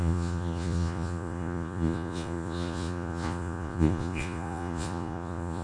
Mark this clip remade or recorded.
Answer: remade